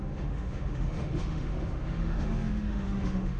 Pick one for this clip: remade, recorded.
remade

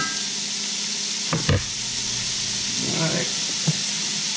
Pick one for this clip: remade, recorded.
recorded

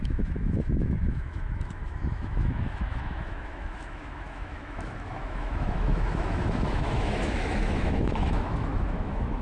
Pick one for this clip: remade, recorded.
remade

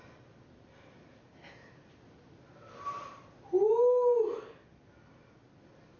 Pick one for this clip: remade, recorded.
recorded